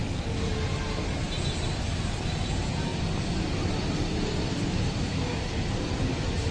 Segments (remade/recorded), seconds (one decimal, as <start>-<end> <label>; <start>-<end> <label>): 0.0-6.5 recorded